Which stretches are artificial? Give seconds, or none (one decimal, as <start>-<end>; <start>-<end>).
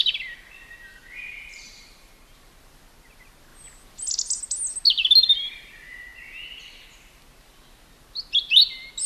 0.9-2.1